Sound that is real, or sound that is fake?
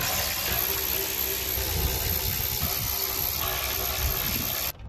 real